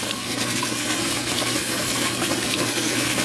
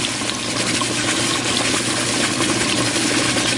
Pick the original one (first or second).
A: second